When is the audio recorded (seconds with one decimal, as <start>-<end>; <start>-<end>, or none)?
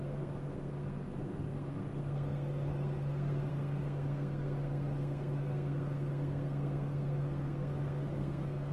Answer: none